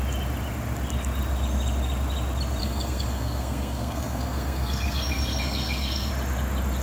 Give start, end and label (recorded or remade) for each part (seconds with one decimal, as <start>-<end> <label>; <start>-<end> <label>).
0.0-2.6 recorded; 2.6-6.1 remade; 6.1-6.8 recorded